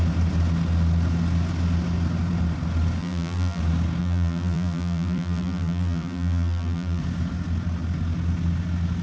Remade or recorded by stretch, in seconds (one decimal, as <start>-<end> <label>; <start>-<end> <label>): 0.0-3.0 recorded; 3.0-3.6 remade; 3.6-4.0 recorded; 4.0-7.0 remade; 7.0-9.0 recorded